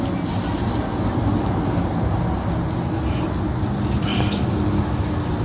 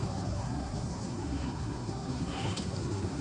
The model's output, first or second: second